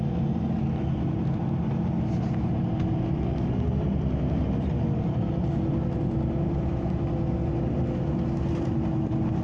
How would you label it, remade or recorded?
recorded